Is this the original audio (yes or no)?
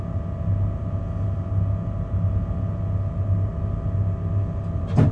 yes